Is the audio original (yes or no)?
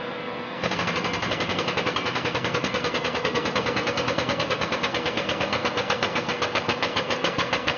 no